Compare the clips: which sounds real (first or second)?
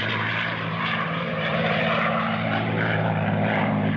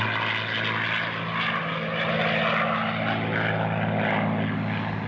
second